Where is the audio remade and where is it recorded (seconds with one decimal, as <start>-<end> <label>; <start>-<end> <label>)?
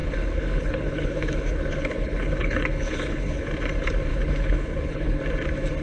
0.0-3.5 remade; 3.5-4.1 recorded; 4.1-5.2 remade; 5.2-5.8 recorded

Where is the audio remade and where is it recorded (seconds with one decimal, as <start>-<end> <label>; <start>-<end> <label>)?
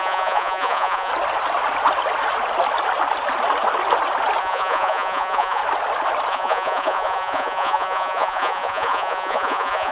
0.0-1.1 remade; 1.1-4.4 recorded; 4.4-5.6 remade; 5.6-6.3 recorded; 6.3-9.9 remade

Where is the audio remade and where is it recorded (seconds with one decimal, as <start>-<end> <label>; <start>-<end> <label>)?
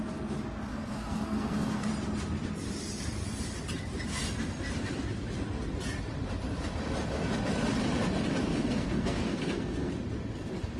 0.0-0.7 recorded; 0.7-1.9 remade; 1.9-8.5 recorded; 8.5-9.9 remade; 9.9-10.8 recorded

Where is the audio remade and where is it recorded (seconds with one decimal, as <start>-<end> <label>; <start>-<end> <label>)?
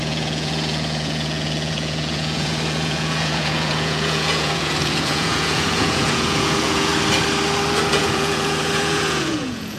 0.0-6.9 remade; 6.9-7.9 recorded; 7.9-9.8 remade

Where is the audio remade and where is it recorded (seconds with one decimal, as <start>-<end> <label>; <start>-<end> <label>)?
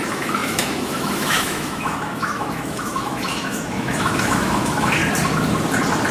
0.0-5.0 remade; 5.0-6.1 recorded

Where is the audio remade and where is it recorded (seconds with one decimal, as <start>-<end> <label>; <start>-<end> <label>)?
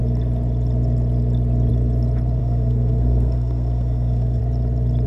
0.0-2.4 recorded; 2.4-4.4 remade; 4.4-5.1 recorded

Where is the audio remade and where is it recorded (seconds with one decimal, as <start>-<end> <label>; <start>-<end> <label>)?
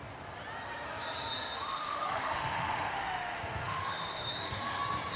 0.0-1.7 recorded; 1.7-4.8 remade; 4.8-5.2 recorded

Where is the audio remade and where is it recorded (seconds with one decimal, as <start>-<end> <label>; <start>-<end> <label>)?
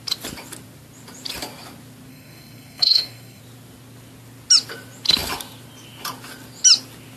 0.0-2.1 recorded; 2.1-3.4 remade; 3.4-7.2 recorded